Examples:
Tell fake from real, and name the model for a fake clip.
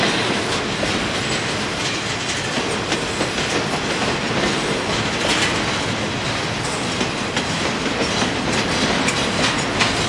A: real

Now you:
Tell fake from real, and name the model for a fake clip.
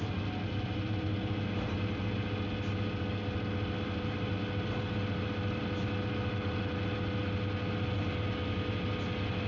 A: real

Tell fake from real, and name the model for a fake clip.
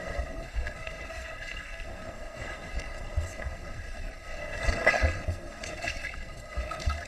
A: fake, codec, SNAC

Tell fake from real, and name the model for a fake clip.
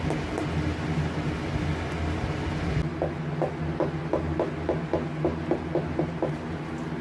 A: real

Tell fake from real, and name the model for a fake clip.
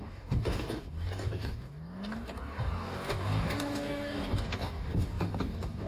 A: fake, codec, DAC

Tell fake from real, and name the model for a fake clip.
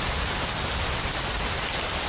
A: real